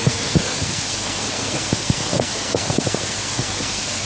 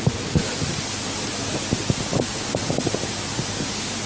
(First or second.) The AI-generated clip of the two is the first